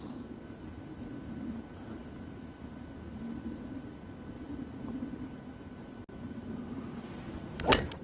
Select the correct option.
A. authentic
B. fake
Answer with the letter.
A